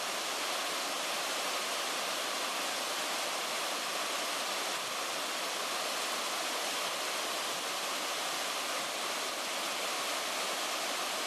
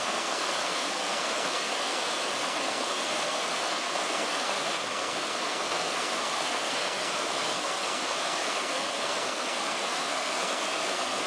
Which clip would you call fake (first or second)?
second